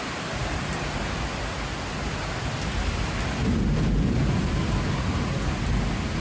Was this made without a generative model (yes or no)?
yes